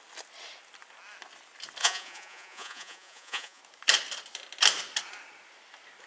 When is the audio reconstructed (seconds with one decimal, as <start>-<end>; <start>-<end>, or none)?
1.8-3.6